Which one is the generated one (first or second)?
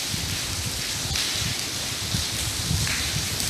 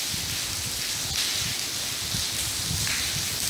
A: first